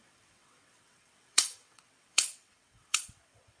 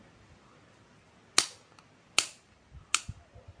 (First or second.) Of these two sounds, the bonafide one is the second